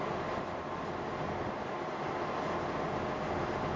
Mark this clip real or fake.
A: real